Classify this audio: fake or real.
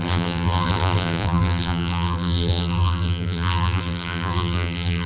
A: fake